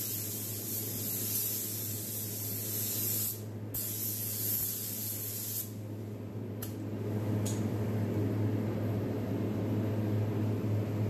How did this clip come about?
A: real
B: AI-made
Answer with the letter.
A